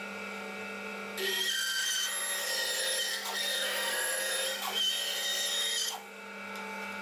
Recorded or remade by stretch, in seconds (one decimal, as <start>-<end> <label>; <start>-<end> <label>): 0.0-3.1 recorded; 3.1-4.3 remade; 4.3-7.0 recorded